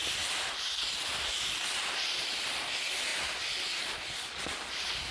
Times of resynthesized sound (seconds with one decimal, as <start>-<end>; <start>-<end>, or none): none